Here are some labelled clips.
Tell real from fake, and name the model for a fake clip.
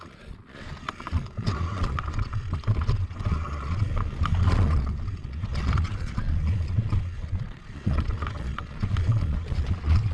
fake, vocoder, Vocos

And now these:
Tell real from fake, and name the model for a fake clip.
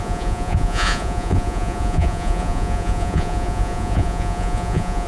fake, vocoder, Vocos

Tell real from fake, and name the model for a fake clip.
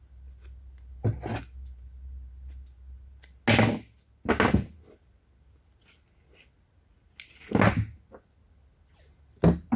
real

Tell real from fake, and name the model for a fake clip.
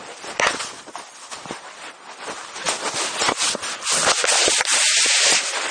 real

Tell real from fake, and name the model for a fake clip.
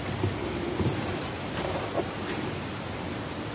real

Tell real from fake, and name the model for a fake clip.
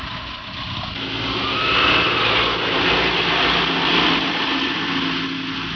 real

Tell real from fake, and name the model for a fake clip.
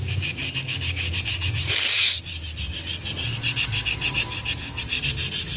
real